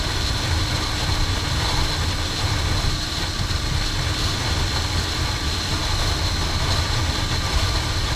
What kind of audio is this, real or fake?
real